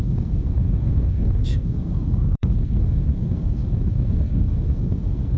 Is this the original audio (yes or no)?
no